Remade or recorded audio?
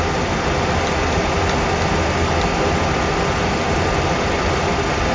recorded